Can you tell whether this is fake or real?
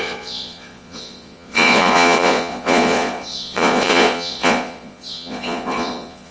fake